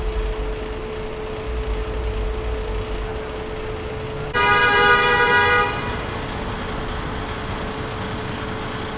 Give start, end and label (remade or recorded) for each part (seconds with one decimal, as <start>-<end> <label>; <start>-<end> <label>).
0.0-9.0 recorded